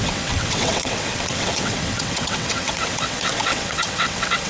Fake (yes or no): yes